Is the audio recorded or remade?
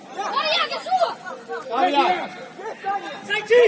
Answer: recorded